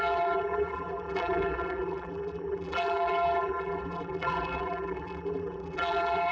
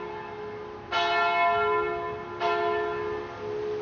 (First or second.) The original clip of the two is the second